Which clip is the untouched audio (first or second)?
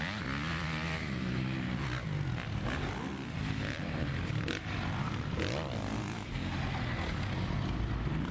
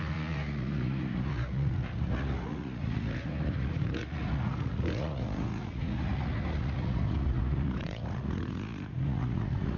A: first